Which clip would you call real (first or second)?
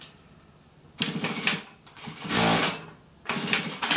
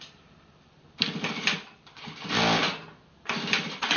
first